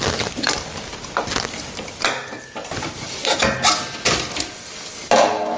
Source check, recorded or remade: recorded